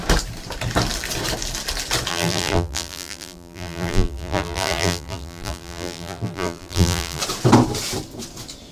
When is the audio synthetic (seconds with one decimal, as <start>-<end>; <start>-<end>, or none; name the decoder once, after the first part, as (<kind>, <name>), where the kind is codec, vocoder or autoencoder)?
2.1-7.2 (vocoder, BigVGAN v2)